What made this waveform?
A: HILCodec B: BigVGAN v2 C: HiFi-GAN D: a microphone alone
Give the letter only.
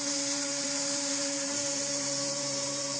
B